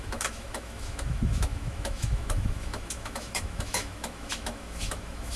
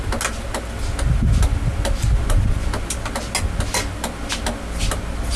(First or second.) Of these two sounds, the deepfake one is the first